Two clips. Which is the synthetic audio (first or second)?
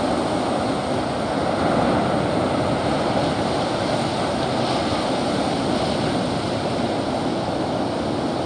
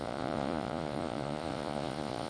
second